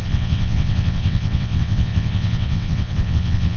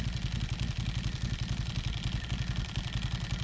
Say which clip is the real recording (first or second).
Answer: second